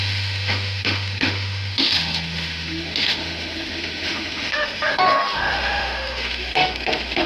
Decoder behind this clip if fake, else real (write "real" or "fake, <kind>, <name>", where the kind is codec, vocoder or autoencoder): fake, autoencoder, DAC-VAE